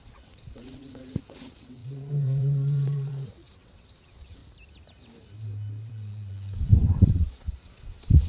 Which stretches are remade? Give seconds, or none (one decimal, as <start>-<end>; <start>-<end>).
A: 0.0-4.4; 5.9-8.3